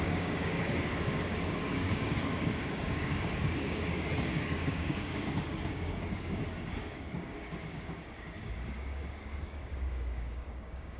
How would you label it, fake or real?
fake